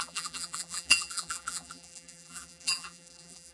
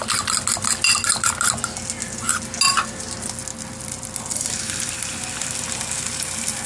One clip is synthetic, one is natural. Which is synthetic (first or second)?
first